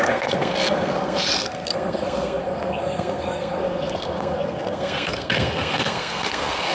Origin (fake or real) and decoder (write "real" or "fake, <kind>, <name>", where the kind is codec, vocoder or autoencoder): fake, codec, SNAC